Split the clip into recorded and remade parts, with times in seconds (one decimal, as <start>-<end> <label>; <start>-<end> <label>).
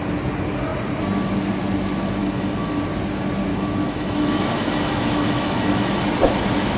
0.0-2.2 recorded; 2.2-2.8 remade; 2.8-3.5 recorded; 3.5-6.0 remade; 6.0-6.8 recorded